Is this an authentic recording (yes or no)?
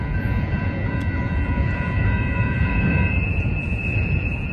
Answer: no